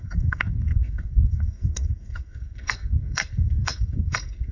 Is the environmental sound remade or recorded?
remade